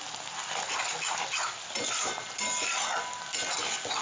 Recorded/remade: recorded